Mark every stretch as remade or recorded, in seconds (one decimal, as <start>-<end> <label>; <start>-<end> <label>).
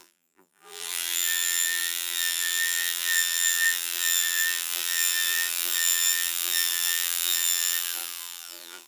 0.0-8.9 remade